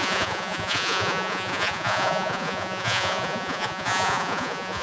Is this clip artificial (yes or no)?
yes